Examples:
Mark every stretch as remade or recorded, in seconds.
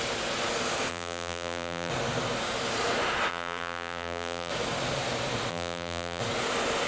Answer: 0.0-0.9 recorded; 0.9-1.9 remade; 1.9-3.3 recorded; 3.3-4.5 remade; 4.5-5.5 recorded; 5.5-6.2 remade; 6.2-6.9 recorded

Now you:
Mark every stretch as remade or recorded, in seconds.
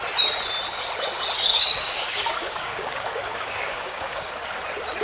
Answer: 0.0-1.5 recorded; 1.5-4.3 remade; 4.3-5.0 recorded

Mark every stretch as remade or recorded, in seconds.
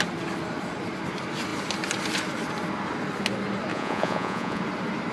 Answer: 0.0-3.7 recorded; 3.7-4.6 remade; 4.6-5.1 recorded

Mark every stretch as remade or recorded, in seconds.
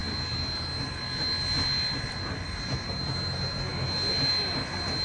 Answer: 0.0-5.0 recorded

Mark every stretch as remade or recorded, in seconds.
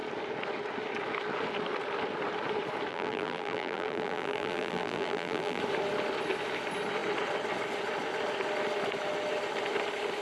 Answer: 0.0-2.9 recorded; 2.9-5.6 remade; 5.6-10.2 recorded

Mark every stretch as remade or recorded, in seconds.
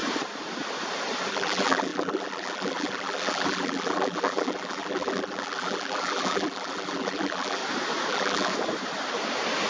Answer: 0.0-1.3 recorded; 1.3-7.6 remade; 7.6-8.1 recorded; 8.1-8.5 remade; 8.5-9.7 recorded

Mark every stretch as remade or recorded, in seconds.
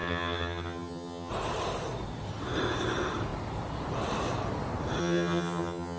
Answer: 0.0-1.3 remade; 1.3-5.0 recorded; 5.0-6.0 remade